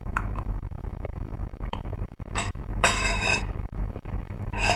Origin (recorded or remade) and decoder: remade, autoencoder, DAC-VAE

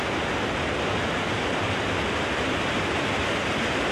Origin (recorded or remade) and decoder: recorded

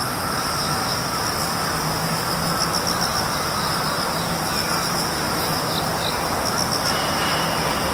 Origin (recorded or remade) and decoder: recorded